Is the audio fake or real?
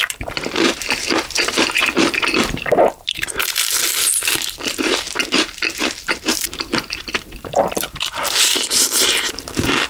fake